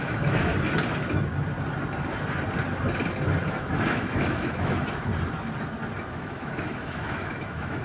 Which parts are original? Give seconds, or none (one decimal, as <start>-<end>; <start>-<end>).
0.5-3.5; 5.1-6.1